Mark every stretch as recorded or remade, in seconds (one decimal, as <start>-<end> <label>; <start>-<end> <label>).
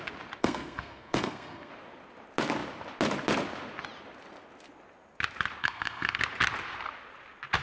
0.0-0.4 recorded; 0.4-1.7 remade; 1.7-5.6 recorded; 5.6-6.2 remade; 6.2-7.6 recorded